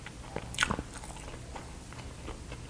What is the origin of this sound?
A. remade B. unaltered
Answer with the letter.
B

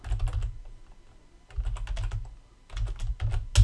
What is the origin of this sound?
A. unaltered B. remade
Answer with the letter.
A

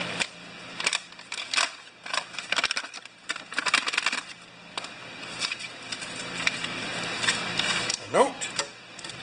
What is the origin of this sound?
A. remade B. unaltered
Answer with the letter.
A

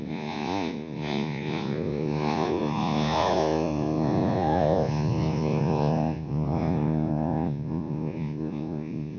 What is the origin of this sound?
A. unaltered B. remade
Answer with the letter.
B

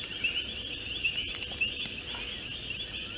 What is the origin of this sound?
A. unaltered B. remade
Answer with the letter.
A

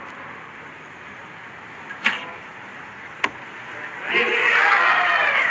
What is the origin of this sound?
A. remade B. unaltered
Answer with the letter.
B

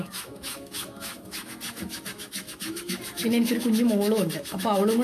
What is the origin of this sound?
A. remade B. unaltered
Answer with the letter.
A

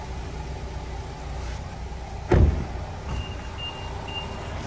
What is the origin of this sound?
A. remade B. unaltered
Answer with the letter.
B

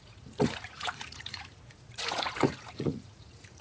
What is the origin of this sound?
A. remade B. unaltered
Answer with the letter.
A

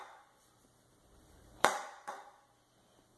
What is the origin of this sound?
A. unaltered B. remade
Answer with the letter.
B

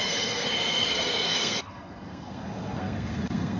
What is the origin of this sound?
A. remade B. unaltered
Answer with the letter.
A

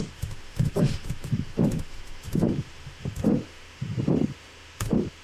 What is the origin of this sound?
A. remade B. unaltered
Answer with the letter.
A